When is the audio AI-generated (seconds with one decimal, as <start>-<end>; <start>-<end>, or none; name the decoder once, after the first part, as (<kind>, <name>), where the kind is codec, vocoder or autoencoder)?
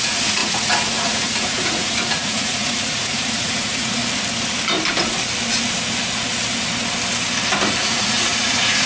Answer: 0.0-4.0 (vocoder, Vocos); 7.8-8.9